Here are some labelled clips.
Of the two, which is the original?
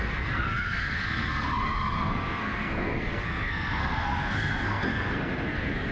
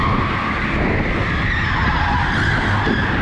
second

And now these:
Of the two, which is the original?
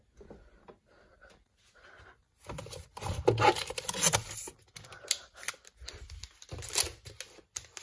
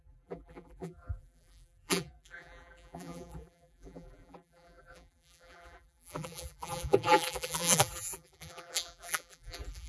first